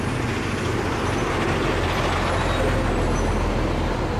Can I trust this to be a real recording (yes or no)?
yes